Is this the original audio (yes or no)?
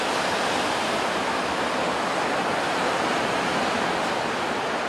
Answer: yes